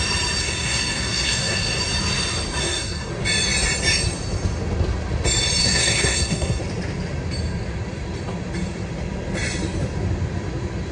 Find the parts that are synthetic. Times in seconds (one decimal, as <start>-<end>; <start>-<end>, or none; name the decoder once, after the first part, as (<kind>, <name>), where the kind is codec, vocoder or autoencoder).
0.4-1.8 (codec, SNAC); 2.6-3.1; 5.6-6.6